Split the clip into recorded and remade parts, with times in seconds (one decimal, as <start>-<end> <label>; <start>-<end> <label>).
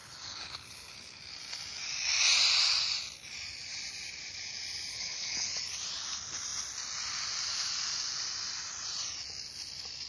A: 0.0-1.2 remade; 1.2-4.9 recorded; 4.9-5.7 remade; 5.7-10.1 recorded